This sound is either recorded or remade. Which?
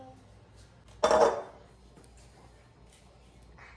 recorded